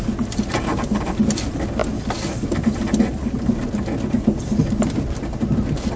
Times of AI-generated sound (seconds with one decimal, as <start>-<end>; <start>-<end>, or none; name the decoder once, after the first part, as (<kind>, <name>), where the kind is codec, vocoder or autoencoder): none

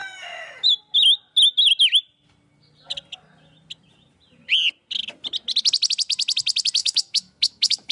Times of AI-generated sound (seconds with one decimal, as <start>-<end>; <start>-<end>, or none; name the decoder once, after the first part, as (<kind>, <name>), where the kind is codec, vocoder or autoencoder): 6.8-7.9 (autoencoder, DAC-VAE)

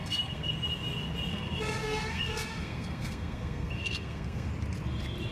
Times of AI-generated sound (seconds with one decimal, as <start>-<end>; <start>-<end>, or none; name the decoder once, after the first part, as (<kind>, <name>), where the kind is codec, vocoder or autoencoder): 0.0-0.5 (codec, SNAC); 1.3-4.5

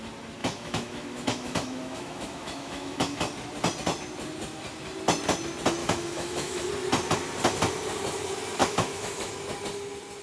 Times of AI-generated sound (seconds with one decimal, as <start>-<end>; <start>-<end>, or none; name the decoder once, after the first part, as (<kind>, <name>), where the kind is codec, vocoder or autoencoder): 0.4-3.2 (autoencoder, DAC-VAE); 5.8-6.7; 8.6-9.3

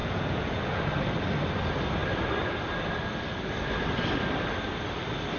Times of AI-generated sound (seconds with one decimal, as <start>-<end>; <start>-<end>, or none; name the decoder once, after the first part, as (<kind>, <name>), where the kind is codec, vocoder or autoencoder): 0.0-0.8 (vocoder, Vocos)

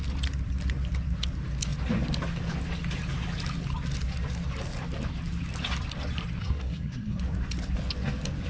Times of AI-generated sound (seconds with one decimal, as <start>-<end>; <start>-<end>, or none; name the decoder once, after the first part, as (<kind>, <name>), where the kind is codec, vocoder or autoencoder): 6.4-7.2 (codec, SNAC)

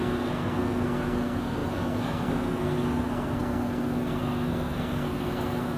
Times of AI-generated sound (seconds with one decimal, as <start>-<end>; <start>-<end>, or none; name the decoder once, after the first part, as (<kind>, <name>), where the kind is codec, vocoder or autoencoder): 0.0-5.8 (codec, SNAC)